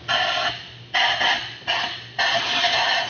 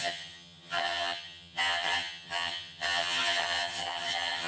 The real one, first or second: first